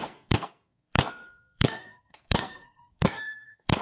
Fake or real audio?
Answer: fake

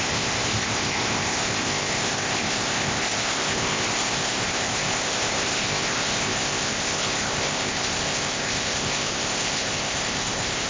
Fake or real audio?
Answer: fake